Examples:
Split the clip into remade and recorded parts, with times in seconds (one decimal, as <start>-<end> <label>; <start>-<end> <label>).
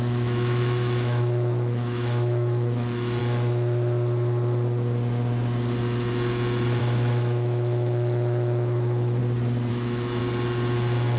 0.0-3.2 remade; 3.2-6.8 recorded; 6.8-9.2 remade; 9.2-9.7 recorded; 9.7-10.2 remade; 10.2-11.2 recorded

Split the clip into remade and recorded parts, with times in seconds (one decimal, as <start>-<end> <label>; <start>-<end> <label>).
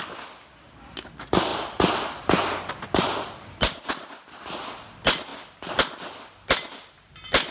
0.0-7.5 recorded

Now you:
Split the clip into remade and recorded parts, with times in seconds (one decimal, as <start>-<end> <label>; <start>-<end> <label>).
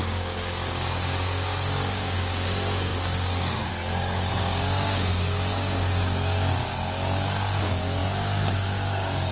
0.0-9.3 remade